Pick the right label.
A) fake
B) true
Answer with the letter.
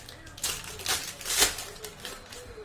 B